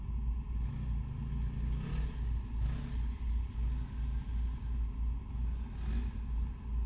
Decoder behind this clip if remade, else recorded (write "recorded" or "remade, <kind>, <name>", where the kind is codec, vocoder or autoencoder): recorded